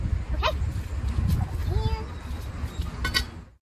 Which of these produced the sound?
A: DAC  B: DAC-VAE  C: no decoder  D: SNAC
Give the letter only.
C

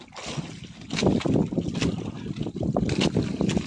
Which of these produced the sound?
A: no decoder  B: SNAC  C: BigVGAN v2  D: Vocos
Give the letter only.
A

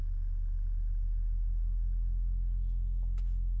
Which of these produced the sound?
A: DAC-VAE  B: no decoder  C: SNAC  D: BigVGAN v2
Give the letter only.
B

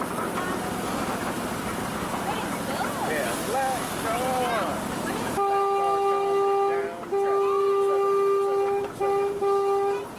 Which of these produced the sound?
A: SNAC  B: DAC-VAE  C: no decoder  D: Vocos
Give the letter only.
C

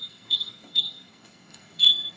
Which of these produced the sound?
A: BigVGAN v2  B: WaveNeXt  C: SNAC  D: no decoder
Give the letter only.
C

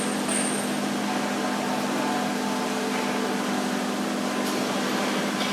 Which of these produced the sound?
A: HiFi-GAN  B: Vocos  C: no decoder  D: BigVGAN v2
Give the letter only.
C